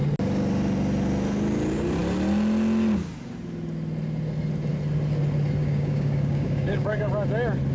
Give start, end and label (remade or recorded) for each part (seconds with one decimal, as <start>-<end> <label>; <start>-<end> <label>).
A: 0.0-5.6 recorded; 5.6-7.1 remade; 7.1-7.7 recorded